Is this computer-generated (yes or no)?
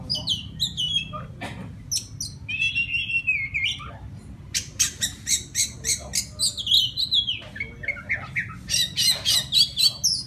no